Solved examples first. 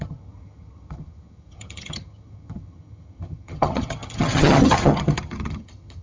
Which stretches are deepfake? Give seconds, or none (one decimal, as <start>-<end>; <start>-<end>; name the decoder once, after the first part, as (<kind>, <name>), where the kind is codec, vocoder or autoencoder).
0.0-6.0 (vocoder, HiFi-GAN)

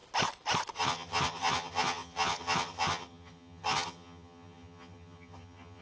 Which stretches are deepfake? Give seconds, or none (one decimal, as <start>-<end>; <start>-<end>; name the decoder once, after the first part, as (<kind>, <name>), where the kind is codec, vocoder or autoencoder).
0.8-5.8 (vocoder, HiFi-GAN)

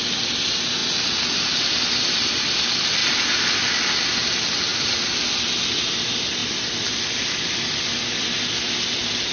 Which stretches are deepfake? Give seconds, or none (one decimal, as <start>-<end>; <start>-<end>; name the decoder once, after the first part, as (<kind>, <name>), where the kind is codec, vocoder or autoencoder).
none